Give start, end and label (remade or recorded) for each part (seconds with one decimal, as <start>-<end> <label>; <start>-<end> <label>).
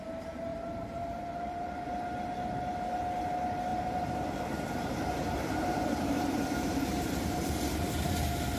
0.0-0.5 recorded; 0.5-1.8 remade; 1.8-3.7 recorded; 3.7-8.1 remade; 8.1-8.6 recorded